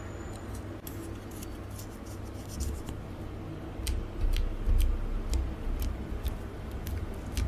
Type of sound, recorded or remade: recorded